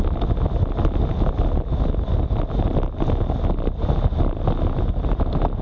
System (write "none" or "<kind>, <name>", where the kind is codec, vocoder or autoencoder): none